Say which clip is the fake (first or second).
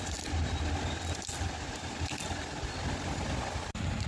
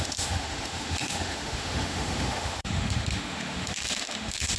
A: second